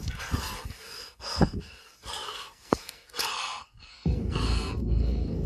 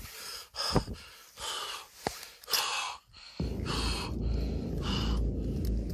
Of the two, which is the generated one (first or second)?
first